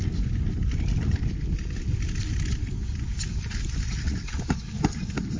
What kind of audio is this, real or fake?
real